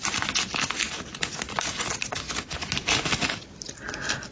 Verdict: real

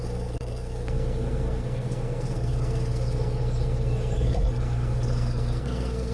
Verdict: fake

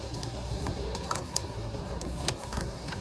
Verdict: fake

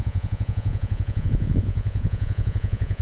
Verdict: fake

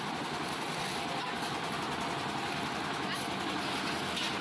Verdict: real